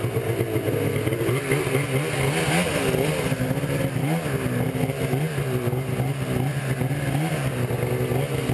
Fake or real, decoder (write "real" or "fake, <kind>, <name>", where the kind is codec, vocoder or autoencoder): real